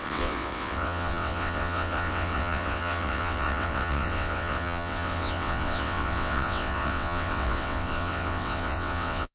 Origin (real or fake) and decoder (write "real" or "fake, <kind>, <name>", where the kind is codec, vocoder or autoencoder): fake, vocoder, WaveNeXt